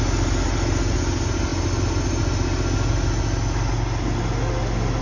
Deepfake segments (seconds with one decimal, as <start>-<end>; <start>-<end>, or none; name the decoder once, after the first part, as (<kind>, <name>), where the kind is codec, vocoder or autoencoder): none

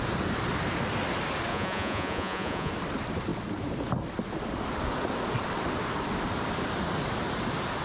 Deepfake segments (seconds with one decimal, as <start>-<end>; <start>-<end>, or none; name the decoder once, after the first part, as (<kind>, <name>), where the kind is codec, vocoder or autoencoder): 1.5-2.7 (vocoder, Vocos)

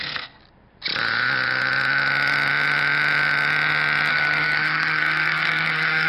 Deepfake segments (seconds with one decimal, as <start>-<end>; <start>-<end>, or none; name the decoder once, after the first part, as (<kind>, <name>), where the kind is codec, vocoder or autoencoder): 0.0-0.4 (codec, SNAC); 4.1-6.1

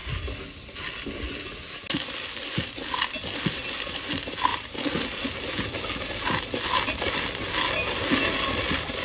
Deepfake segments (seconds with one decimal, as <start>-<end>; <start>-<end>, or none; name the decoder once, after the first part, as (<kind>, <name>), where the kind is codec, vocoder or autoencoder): none

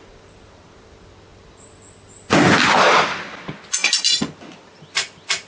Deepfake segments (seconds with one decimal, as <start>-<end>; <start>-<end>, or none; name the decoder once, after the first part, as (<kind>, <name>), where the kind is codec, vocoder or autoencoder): none